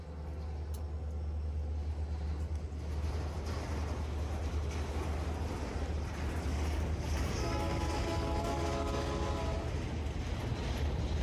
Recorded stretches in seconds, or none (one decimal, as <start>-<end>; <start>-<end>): 0.0-6.5; 9.3-11.2